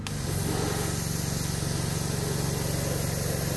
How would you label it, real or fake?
real